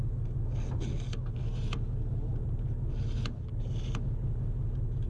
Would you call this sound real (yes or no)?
yes